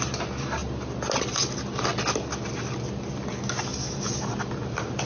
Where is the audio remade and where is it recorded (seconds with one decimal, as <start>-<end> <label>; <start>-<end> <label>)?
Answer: 0.0-5.1 recorded

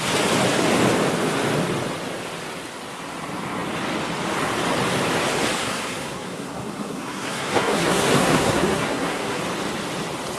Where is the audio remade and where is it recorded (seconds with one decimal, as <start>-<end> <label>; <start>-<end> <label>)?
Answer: 0.0-5.6 recorded; 5.6-9.4 remade; 9.4-10.4 recorded

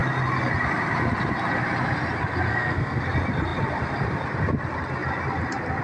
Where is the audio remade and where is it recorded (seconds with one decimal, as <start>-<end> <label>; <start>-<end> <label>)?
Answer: 0.0-2.5 recorded; 2.5-3.0 remade; 3.0-5.8 recorded

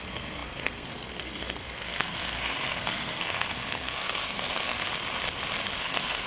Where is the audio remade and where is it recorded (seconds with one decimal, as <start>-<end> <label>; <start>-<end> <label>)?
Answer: 0.0-4.8 remade; 4.8-5.8 recorded; 5.8-6.3 remade

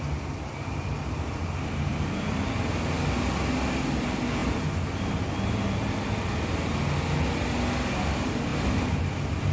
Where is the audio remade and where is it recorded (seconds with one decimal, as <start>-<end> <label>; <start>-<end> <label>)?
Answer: 0.0-9.5 recorded

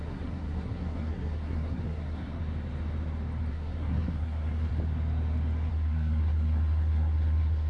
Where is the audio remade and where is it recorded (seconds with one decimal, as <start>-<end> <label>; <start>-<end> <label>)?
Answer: 0.0-2.4 remade; 2.4-3.5 recorded; 3.5-4.7 remade; 4.7-5.7 recorded; 5.7-7.7 remade